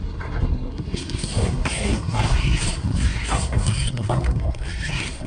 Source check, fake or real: fake